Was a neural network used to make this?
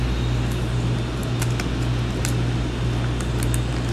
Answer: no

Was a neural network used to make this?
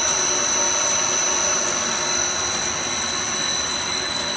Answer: no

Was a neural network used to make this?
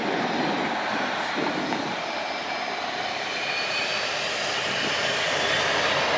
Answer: yes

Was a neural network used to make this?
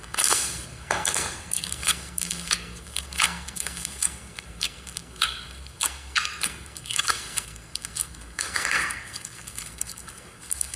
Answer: yes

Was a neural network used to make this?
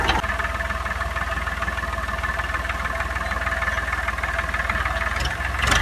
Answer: no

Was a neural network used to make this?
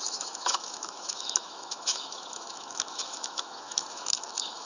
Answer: yes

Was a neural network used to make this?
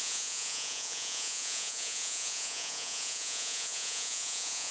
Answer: yes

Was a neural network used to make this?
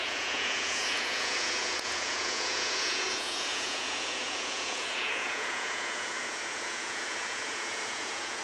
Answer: yes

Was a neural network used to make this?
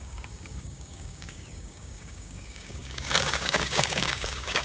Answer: yes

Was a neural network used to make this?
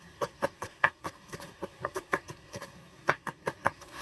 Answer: yes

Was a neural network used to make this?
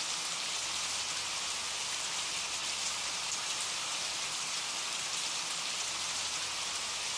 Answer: no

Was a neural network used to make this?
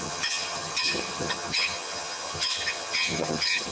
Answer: yes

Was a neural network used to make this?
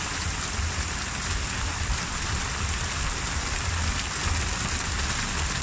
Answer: no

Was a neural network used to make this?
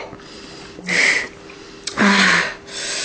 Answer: no